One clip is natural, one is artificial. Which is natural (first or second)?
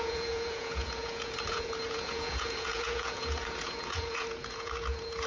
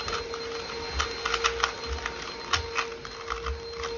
second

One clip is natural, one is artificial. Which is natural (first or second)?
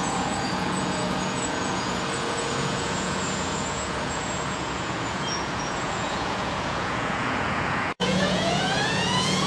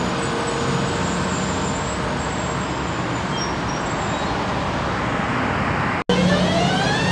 second